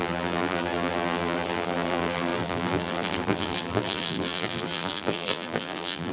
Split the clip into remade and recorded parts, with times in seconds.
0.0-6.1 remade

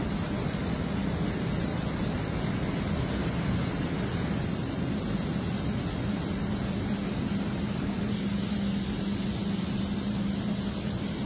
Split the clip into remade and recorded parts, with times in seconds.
0.0-11.3 recorded

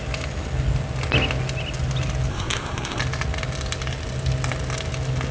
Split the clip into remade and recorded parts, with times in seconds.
0.0-2.3 recorded; 2.3-3.0 remade; 3.0-5.3 recorded